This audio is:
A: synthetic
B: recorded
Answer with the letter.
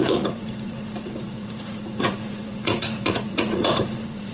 A